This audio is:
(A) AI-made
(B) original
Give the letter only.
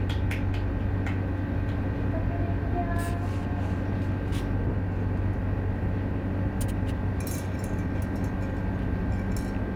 B